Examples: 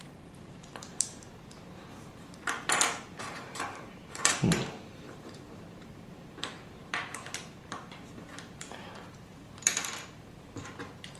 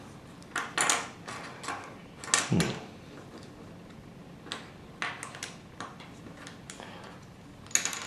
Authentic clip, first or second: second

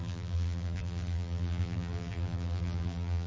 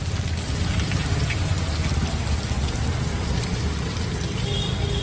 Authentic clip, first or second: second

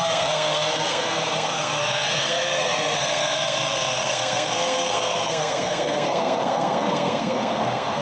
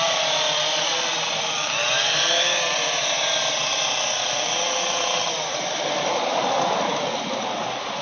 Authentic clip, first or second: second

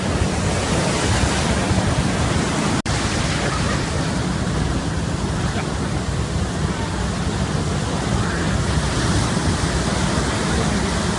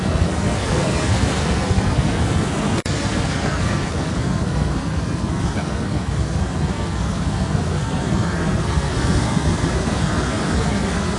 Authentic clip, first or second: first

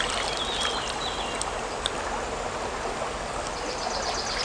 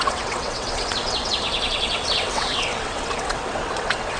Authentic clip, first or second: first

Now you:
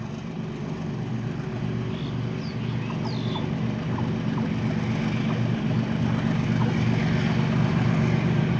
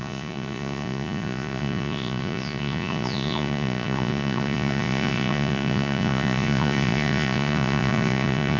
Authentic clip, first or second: first